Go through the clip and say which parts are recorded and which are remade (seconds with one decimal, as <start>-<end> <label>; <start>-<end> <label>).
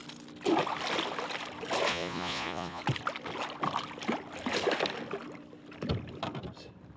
0.0-1.9 recorded; 1.9-2.8 remade; 2.8-7.0 recorded